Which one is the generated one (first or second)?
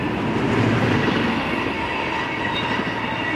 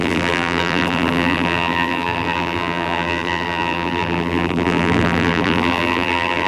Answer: second